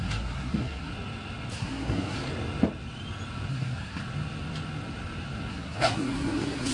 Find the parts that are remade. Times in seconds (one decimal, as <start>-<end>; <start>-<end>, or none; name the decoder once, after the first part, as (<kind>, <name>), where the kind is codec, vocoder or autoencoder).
0.0-0.9 (codec, SNAC); 1.5-2.2; 3.5-4.0; 5.5-6.7